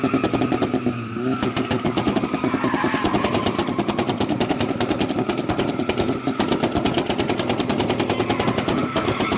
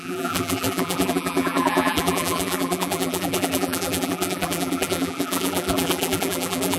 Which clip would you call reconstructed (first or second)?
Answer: second